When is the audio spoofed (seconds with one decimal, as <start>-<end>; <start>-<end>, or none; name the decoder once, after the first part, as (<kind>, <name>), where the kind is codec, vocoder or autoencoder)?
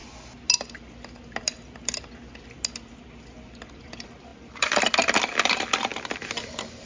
3.7-5.9 (vocoder, BigVGAN v2); 6.5-6.9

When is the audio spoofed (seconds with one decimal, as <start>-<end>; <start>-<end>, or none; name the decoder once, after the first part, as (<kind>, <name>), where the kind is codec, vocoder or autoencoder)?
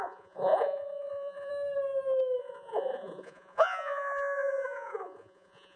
0.0-1.5 (vocoder, Vocos); 2.4-5.8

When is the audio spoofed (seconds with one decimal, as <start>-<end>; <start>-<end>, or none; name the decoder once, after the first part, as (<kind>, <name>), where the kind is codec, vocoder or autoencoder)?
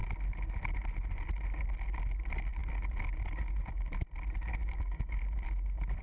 4.5-5.2 (codec, DAC)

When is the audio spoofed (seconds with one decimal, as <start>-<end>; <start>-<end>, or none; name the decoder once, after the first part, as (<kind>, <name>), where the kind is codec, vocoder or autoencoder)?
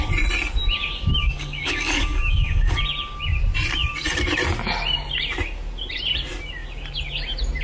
1.2-2.8 (codec, DAC)